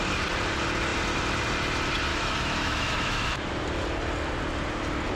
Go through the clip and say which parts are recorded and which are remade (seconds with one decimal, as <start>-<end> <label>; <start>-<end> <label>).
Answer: 0.0-2.1 recorded; 2.1-3.5 remade; 3.5-5.2 recorded

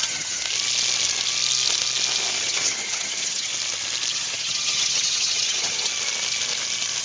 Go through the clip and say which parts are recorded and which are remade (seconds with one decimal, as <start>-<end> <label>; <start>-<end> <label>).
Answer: 0.0-0.4 remade; 0.4-2.4 recorded; 2.4-3.5 remade; 3.5-4.1 recorded; 4.1-5.9 remade; 5.9-7.0 recorded

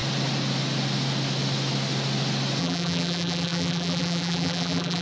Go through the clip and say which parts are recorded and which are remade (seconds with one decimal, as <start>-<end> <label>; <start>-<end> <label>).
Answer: 0.0-2.6 recorded; 2.6-5.0 remade

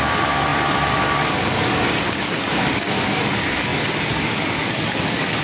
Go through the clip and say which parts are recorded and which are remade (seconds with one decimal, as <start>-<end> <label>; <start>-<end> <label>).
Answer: 0.0-5.4 remade

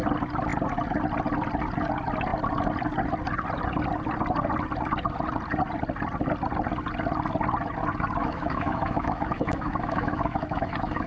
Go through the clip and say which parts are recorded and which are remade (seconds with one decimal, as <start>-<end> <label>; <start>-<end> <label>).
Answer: 0.0-8.2 recorded; 8.2-11.1 remade